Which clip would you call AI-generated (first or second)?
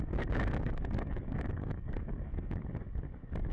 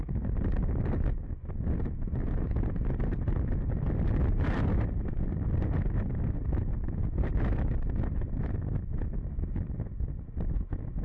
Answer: first